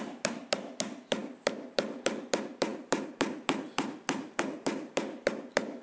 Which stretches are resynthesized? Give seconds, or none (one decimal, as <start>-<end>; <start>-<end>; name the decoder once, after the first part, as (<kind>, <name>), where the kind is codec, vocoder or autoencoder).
0.0-5.8 (vocoder, BigVGAN v2)